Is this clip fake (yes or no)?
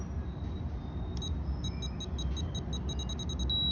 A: no